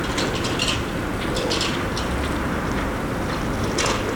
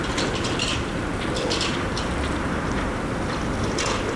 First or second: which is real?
first